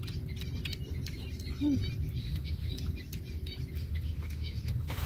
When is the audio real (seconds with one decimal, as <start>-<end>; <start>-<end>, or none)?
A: 0.0-2.2; 2.7-3.8

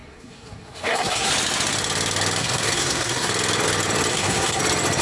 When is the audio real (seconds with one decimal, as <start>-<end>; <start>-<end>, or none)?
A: 1.3-2.4; 3.3-4.1; 4.6-5.0